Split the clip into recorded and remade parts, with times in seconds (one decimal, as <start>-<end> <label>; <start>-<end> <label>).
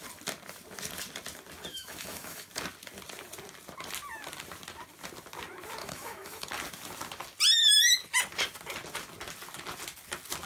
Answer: 0.0-1.7 recorded; 1.7-2.5 remade; 2.5-5.8 recorded; 5.8-6.5 remade; 6.5-10.5 recorded